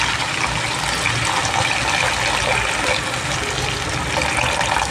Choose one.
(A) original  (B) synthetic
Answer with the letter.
A